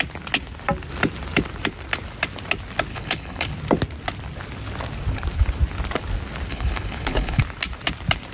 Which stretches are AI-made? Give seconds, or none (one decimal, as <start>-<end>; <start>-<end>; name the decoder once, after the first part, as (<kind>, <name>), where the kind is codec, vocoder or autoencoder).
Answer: 2.9-3.5 (codec, HILCodec); 6.5-7.4